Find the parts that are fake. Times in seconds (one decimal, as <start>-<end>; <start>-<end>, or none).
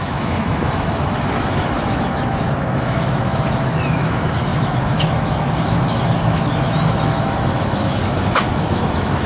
0.0-9.3